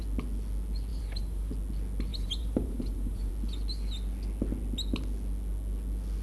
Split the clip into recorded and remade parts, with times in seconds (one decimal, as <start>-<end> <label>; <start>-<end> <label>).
0.0-0.9 recorded; 0.9-1.5 remade; 1.5-2.1 recorded; 2.1-3.3 remade; 3.3-6.2 recorded